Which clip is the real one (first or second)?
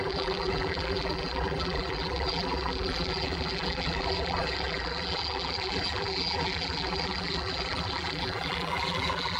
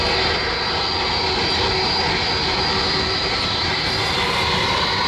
second